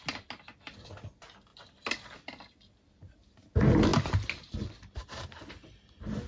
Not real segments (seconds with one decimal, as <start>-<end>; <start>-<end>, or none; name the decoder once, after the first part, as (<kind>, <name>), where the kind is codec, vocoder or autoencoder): none